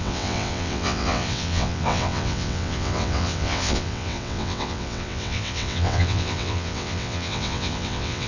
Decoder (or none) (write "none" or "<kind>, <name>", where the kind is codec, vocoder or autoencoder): vocoder, WaveNeXt